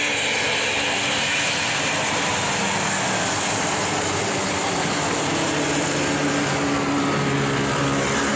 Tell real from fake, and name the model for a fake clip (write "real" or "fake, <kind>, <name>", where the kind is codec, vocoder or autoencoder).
real